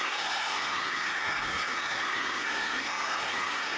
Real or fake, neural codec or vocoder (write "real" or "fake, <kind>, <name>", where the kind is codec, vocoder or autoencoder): fake, codec, SNAC